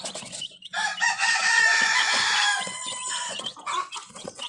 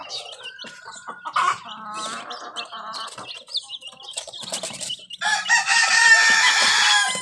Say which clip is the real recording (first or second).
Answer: second